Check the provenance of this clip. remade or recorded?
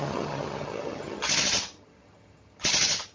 remade